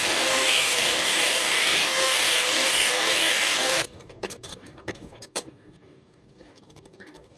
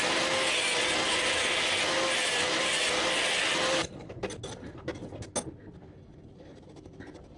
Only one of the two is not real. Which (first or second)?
first